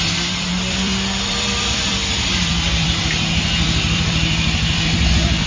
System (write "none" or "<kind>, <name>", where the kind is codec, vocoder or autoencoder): vocoder, BigVGAN v2